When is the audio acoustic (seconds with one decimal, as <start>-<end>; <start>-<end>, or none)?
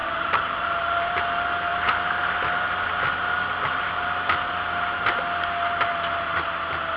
1.2-7.0